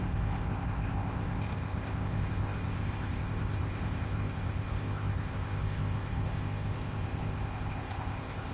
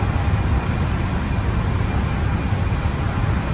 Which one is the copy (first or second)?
first